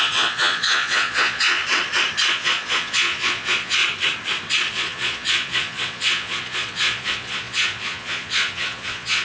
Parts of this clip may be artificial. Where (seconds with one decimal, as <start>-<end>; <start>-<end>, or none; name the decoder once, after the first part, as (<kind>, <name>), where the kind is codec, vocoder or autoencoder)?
0.0-1.6 (vocoder, Vocos); 2.3-3.8; 4.7-9.2